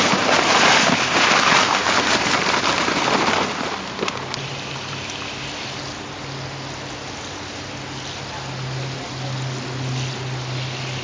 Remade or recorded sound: recorded